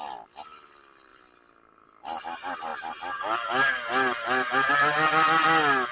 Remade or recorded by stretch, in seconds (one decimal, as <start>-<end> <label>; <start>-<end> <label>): 0.0-5.9 recorded